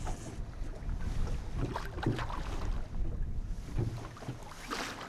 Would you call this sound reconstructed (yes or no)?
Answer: no